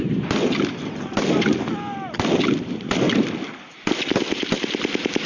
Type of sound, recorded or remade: recorded